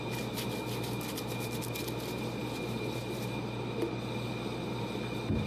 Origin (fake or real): real